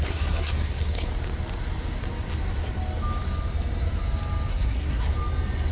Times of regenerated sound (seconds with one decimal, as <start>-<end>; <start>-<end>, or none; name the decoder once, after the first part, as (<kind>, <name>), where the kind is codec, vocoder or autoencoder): 0.0-1.1 (codec, SNAC); 4.5-5.1